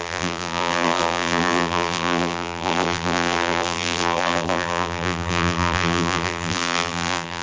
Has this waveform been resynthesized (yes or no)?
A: yes